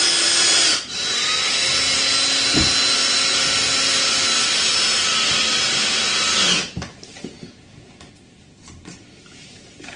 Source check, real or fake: real